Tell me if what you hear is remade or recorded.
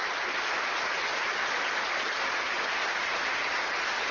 recorded